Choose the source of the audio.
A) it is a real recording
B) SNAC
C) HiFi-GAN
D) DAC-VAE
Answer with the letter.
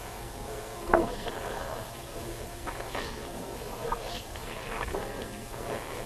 B